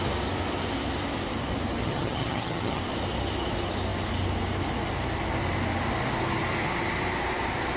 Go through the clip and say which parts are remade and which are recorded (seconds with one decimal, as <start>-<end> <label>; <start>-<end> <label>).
0.0-1.8 recorded; 1.8-2.8 remade; 2.8-7.8 recorded